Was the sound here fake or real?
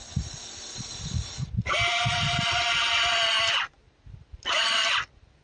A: real